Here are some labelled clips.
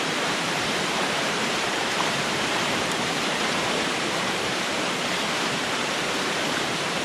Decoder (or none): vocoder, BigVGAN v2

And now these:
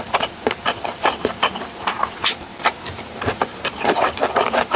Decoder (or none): vocoder, BigVGAN v2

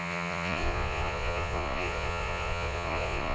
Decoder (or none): vocoder, Vocos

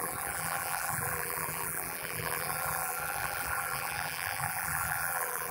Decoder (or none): vocoder, BigVGAN v2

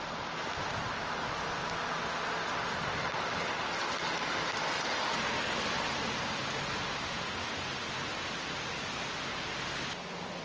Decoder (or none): none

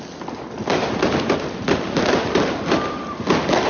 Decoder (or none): none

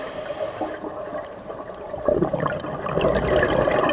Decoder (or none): none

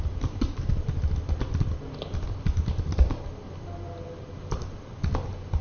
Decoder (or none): none